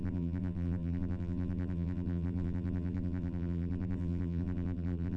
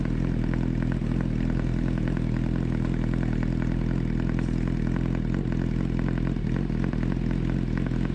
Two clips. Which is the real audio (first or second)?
second